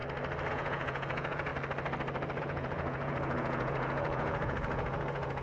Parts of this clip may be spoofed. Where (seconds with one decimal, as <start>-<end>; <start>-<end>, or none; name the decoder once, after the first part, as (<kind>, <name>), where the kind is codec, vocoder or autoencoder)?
0.5-1.5 (vocoder, Vocos); 2.4-5.4